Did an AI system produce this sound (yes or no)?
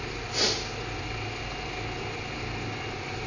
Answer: no